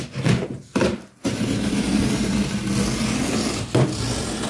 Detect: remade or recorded recorded